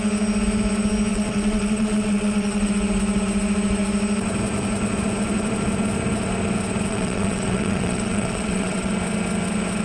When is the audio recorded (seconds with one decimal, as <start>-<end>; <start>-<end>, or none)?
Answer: 0.0-1.1; 2.7-6.9; 8.9-9.8